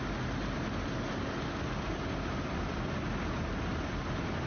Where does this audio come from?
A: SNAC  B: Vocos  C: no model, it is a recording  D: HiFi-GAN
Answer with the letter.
C